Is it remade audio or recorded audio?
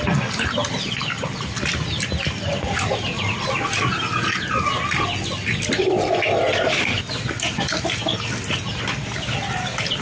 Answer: recorded